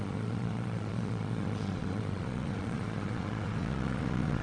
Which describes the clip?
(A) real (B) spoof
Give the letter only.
B